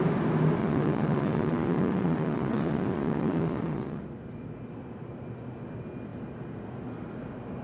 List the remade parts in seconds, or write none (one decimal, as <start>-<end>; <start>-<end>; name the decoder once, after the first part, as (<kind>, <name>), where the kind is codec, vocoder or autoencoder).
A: 0.6-4.0 (vocoder, Vocos)